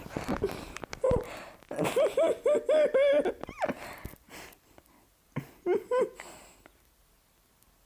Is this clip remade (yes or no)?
no